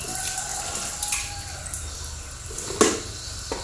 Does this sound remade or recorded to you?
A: recorded